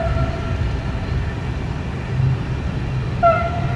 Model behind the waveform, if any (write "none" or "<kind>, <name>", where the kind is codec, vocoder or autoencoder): none